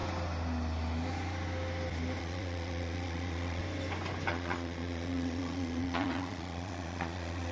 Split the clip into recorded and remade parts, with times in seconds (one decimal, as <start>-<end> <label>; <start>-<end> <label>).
0.0-2.2 recorded; 2.2-3.6 remade; 3.6-4.3 recorded; 4.3-7.5 remade